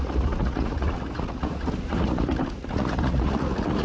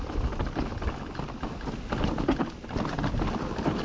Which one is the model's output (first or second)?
first